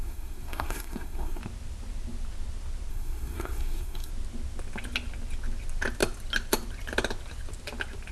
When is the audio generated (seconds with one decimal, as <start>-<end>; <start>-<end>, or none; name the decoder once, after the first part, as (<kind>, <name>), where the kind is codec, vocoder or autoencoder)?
0.0-1.4 (codec, SNAC); 2.9-4.1